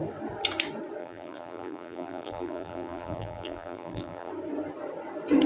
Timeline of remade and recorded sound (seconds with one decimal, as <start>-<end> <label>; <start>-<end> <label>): 0.0-1.0 recorded; 1.0-4.3 remade; 4.3-5.5 recorded